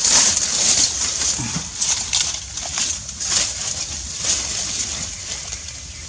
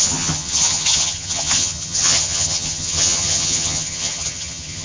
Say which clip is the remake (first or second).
second